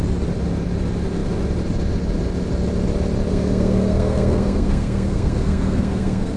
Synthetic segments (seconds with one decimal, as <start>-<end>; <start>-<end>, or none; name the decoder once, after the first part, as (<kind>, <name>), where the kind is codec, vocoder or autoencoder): 3.3-6.4 (codec, SNAC)